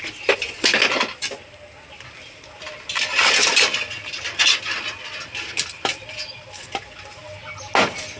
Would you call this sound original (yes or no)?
yes